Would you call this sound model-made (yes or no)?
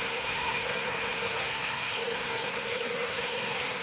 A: yes